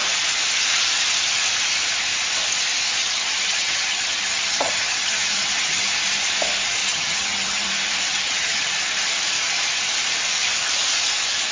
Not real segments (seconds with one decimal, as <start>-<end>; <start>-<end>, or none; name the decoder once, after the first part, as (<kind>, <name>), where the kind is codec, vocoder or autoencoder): 3.0-5.8 (vocoder, HiFi-GAN); 6.8-7.7; 8.1-8.7